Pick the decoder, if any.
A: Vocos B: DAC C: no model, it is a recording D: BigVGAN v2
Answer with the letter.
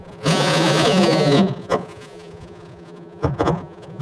A